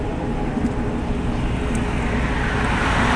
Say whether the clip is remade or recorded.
recorded